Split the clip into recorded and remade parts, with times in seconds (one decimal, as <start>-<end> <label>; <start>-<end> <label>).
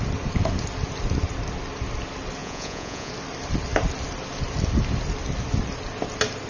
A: 0.0-2.4 recorded; 2.4-3.1 remade; 3.1-6.5 recorded